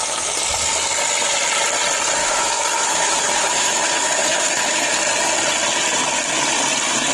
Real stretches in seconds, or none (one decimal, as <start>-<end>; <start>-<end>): 0.0-2.2; 4.9-7.1